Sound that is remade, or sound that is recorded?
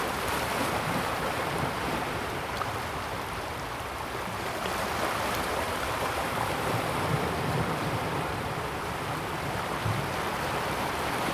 remade